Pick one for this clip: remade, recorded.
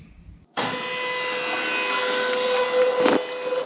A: recorded